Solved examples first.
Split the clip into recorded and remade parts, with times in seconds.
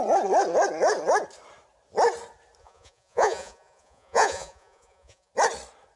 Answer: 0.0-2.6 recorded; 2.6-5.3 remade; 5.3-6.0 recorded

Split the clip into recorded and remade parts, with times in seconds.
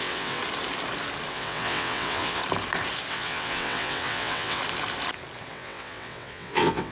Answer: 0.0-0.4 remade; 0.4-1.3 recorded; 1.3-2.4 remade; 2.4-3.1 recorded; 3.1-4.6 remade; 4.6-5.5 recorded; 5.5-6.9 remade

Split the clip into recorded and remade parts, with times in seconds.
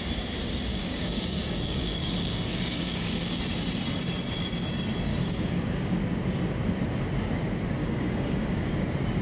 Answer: 0.0-0.7 recorded; 0.7-3.4 remade; 3.4-5.1 recorded; 5.1-6.0 remade; 6.0-7.8 recorded; 7.8-8.7 remade; 8.7-9.2 recorded